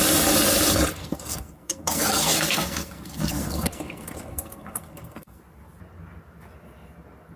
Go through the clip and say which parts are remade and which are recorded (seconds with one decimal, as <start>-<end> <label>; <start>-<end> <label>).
0.0-1.0 recorded; 1.0-5.4 remade; 5.4-7.4 recorded